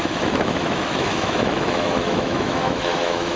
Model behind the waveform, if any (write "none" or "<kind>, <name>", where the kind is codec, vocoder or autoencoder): autoencoder, DAC-VAE